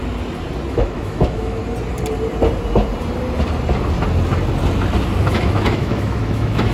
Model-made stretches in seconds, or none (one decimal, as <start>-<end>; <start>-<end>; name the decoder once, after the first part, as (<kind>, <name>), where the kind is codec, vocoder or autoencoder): 0.7-1.6 (autoencoder, DAC-VAE); 5.3-6.7